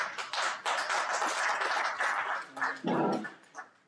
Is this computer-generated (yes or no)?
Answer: no